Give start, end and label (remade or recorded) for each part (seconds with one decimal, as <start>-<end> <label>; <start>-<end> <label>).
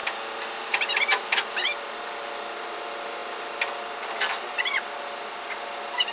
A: 0.0-6.1 recorded